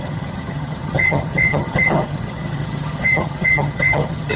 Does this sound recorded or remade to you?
remade